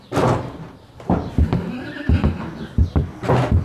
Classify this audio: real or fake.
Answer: real